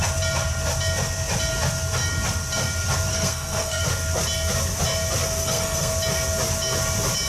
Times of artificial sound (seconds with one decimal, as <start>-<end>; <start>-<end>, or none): 3.1-3.8; 5.4-5.9